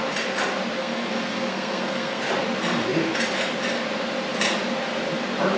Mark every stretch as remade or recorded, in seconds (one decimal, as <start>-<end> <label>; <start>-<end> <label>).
0.0-0.8 recorded; 0.8-2.2 remade; 2.2-5.6 recorded